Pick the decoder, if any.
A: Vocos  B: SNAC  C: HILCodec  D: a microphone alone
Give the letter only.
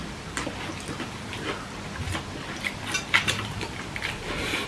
D